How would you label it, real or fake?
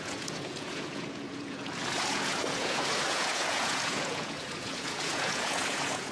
fake